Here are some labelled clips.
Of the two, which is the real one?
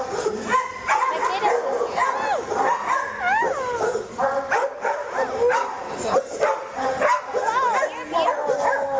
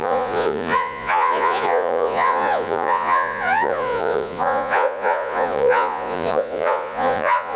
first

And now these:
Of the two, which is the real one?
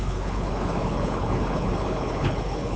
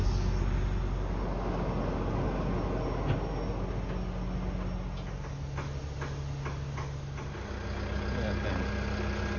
second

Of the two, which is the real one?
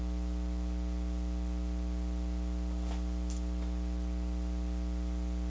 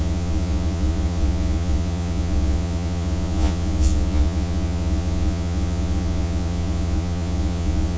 first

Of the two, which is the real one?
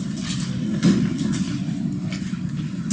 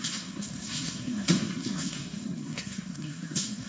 first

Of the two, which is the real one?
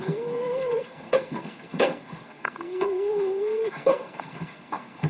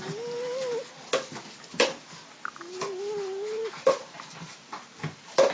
second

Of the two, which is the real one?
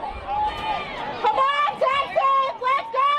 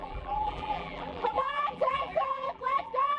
first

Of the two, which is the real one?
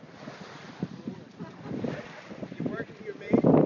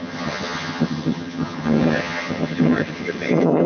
first